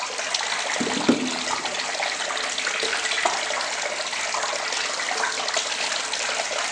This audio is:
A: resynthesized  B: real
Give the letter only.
B